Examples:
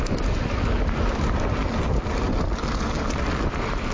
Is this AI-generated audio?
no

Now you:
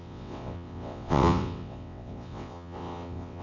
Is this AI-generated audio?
yes